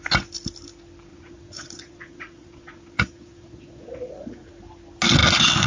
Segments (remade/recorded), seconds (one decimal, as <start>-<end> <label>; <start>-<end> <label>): 0.0-1.1 recorded; 1.1-4.5 remade; 4.5-5.7 recorded